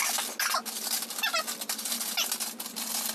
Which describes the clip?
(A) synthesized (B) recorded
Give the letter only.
B